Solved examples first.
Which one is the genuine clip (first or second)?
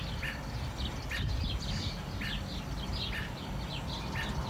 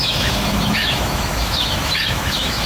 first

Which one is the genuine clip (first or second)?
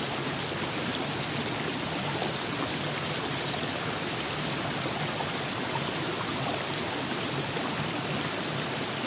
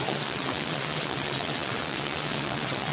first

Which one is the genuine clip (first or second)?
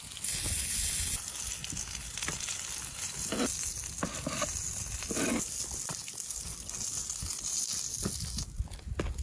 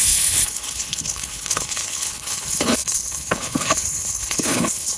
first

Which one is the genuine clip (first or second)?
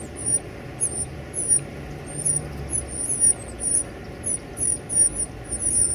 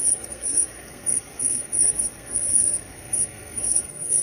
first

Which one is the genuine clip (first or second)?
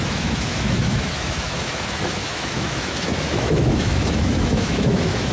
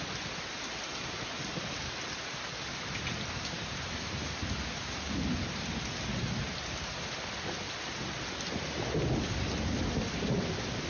second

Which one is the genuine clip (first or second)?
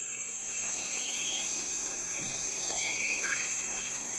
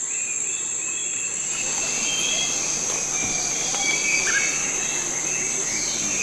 second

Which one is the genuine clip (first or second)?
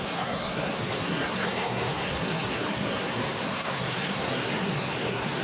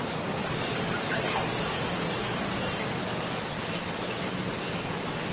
second